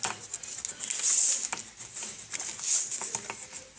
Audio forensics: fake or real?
real